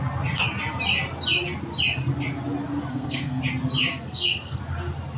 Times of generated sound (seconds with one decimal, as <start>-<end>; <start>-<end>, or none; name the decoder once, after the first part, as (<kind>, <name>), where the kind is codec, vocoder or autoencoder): 2.9-3.4 (codec, SNAC); 3.9-4.6